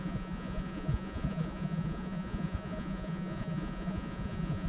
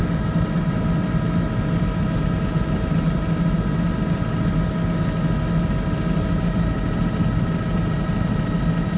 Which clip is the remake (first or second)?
first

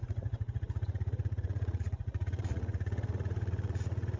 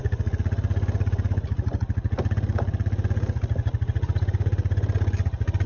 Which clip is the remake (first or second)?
first